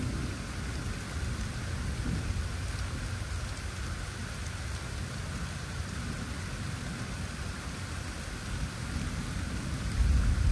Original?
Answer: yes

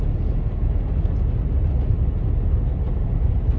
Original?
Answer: yes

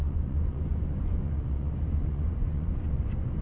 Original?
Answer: no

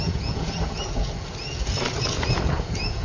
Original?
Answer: no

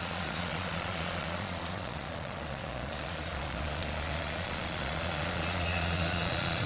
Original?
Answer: no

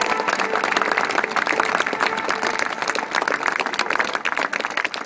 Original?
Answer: yes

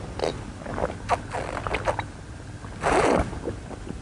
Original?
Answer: yes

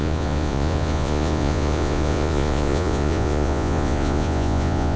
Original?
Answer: no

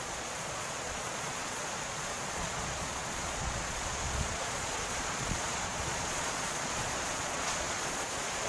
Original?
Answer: no